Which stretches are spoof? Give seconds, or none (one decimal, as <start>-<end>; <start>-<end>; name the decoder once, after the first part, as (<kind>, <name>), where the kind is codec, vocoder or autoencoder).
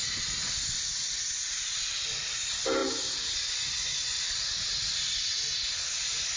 none